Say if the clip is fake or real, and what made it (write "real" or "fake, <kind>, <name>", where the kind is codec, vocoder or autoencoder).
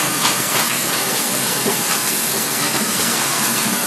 fake, codec, SNAC